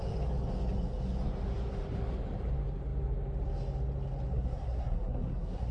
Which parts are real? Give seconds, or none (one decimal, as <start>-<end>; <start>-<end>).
0.0-4.3